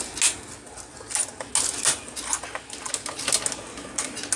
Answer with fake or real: real